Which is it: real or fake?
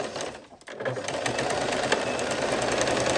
real